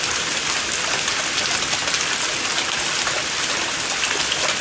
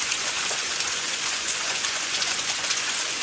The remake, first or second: second